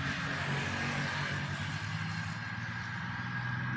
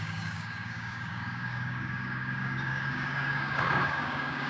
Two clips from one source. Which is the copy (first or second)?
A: second